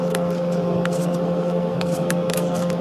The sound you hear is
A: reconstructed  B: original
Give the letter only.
A